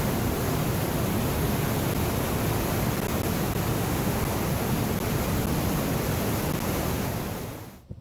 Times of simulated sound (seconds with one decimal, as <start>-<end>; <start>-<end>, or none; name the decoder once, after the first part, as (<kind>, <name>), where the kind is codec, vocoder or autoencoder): 3.7-4.2 (autoencoder, DAC-VAE)